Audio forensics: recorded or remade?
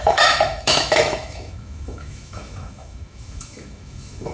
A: remade